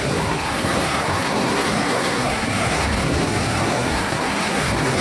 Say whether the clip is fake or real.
fake